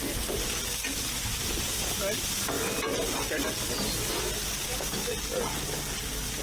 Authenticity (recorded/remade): recorded